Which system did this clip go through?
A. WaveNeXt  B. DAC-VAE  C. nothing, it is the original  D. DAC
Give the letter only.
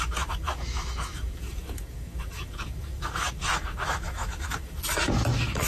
B